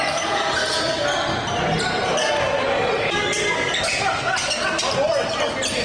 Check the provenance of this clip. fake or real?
real